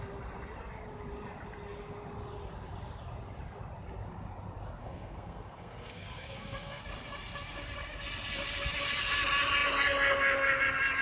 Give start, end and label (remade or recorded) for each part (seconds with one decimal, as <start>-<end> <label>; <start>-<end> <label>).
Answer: 0.0-4.8 recorded; 4.8-6.8 remade; 6.8-11.0 recorded